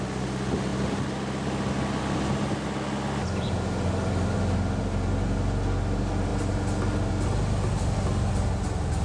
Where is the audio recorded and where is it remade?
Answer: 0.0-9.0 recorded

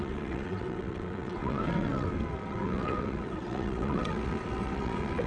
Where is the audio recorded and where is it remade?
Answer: 0.0-5.3 remade